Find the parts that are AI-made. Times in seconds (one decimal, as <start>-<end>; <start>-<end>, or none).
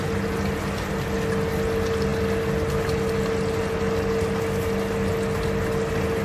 none